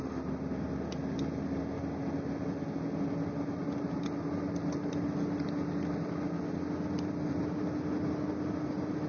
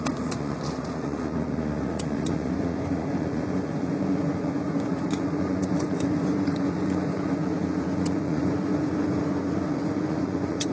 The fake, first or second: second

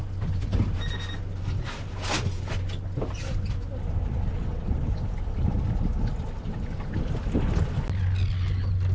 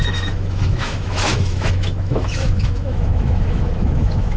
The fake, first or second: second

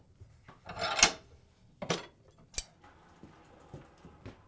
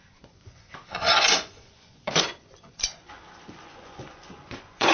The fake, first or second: second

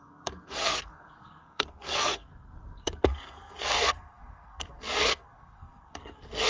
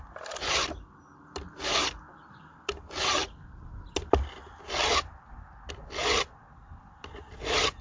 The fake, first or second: first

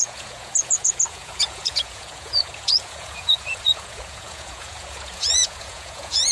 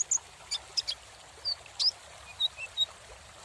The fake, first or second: first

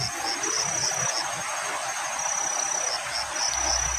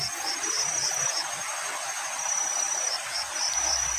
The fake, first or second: second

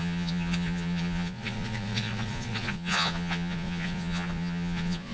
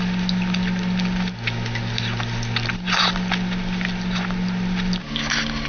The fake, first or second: first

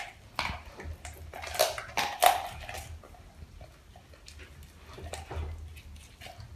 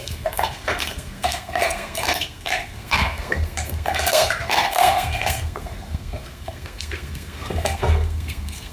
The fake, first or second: second